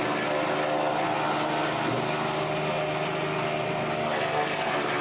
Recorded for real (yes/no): yes